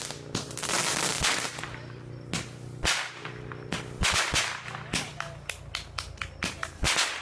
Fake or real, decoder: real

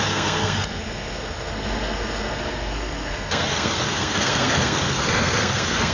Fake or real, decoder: fake, codec, SNAC